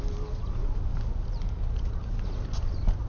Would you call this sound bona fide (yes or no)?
yes